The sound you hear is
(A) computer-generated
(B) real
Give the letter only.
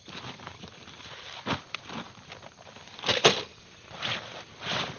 A